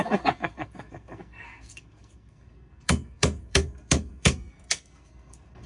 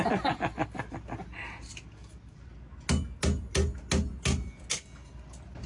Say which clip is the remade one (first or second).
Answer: first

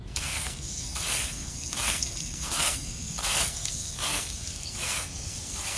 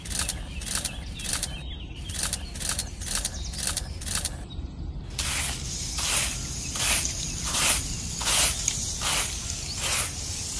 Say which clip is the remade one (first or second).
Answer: first